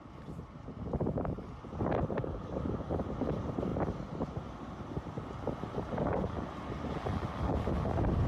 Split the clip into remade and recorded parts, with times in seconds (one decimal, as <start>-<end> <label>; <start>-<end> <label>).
0.0-2.2 recorded; 2.2-3.0 remade; 3.0-8.3 recorded

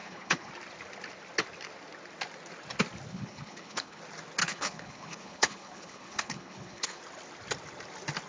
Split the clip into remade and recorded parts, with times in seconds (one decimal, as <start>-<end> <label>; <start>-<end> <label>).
0.0-0.5 remade; 0.5-3.1 recorded; 3.1-4.0 remade; 4.0-4.4 recorded; 4.4-7.0 remade; 7.0-8.3 recorded

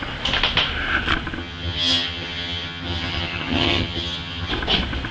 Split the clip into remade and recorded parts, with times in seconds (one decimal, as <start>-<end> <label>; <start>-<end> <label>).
0.0-1.4 recorded; 1.4-4.5 remade; 4.5-5.1 recorded

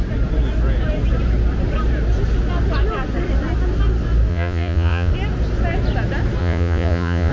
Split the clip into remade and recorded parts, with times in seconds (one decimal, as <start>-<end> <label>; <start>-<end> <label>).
0.0-4.3 recorded; 4.3-5.1 remade; 5.1-6.4 recorded; 6.4-7.3 remade